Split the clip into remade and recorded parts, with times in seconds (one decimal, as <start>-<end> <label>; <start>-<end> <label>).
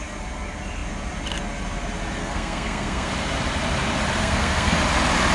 0.0-2.2 recorded; 2.2-3.1 remade; 3.1-4.2 recorded; 4.2-4.8 remade; 4.8-5.3 recorded